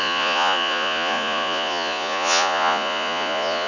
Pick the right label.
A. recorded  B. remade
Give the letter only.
B